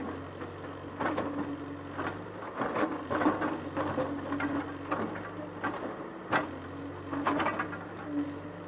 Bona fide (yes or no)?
yes